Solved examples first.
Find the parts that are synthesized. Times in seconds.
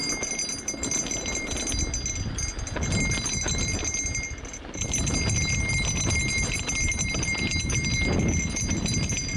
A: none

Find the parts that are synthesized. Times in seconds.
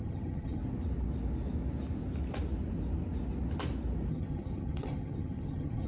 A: 0.0-0.6 (vocoder, HiFi-GAN); 4.1-5.9